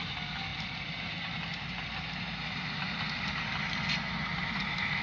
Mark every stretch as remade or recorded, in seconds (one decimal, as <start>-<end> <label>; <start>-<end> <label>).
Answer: 0.0-5.0 recorded